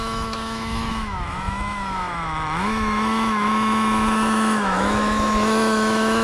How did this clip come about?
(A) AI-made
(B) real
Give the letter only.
A